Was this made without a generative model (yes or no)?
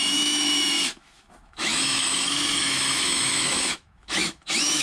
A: no